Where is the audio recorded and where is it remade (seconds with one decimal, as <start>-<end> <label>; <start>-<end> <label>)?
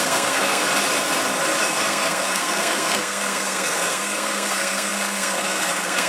0.0-0.6 remade; 0.6-1.6 recorded; 1.6-6.1 remade